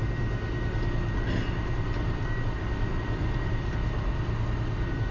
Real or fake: real